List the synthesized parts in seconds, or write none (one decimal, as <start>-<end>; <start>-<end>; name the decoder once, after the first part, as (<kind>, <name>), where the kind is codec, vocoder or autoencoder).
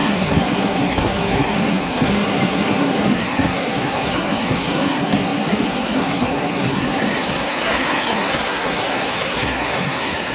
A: 0.0-10.3 (codec, SNAC)